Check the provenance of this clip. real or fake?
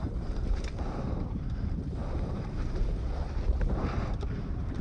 fake